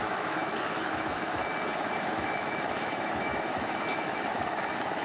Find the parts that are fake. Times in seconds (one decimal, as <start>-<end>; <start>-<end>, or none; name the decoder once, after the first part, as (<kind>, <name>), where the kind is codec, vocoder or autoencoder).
0.0-1.4 (autoencoder, DAC-VAE); 2.1-5.0